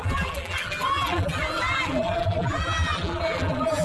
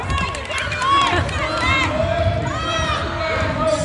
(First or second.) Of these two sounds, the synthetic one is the first